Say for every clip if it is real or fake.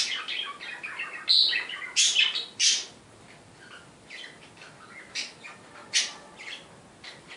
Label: real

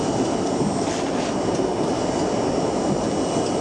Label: real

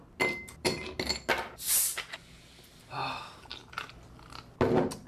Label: real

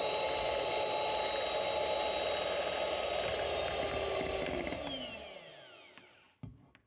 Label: real